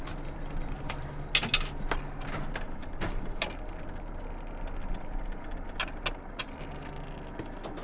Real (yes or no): yes